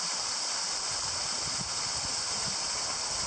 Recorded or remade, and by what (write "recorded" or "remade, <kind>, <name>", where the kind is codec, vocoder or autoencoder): recorded